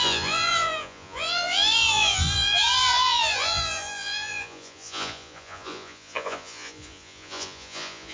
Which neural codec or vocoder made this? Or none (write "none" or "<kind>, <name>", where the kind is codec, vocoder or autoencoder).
vocoder, Vocos